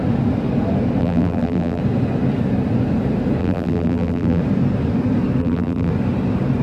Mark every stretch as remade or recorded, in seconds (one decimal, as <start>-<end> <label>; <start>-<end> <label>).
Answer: 0.0-1.0 recorded; 1.0-1.8 remade; 1.8-3.4 recorded; 3.4-4.4 remade; 4.4-5.4 recorded; 5.4-5.9 remade; 5.9-6.6 recorded